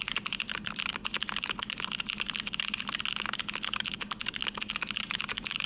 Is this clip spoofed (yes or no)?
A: no